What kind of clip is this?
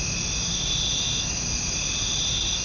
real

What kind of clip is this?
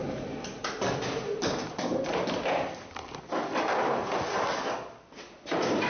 real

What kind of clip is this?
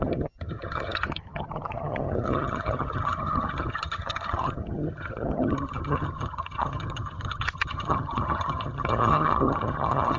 fake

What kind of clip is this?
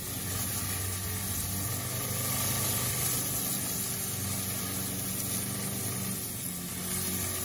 real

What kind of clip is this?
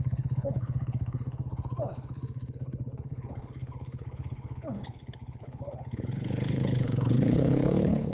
fake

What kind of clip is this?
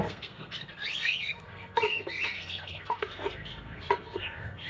fake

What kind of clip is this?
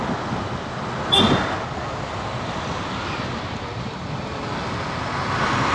real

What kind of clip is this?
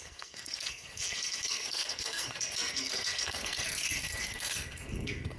fake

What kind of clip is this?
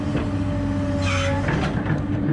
real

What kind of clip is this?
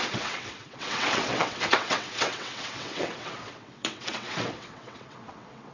fake